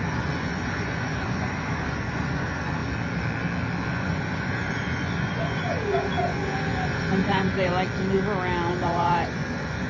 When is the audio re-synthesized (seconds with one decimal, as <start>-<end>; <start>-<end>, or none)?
0.0-2.8; 3.9-7.7; 8.7-9.9